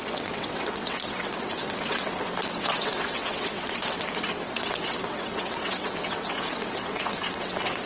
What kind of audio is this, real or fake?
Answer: fake